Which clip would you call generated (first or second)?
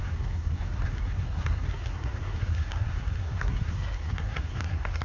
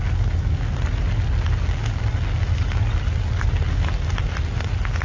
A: first